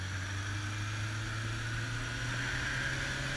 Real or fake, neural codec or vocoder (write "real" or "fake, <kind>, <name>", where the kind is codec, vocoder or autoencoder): real